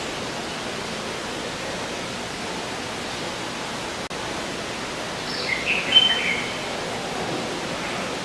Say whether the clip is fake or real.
real